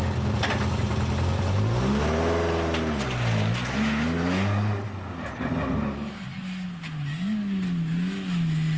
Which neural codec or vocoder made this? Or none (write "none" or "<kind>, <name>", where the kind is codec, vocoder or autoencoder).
none